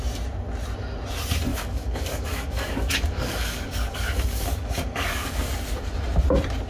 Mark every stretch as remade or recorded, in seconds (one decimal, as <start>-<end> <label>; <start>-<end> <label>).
0.0-1.5 recorded; 1.5-5.5 remade; 5.5-6.7 recorded